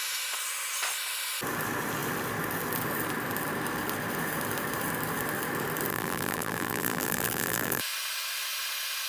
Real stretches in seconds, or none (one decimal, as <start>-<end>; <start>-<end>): 0.0-5.9; 7.8-9.1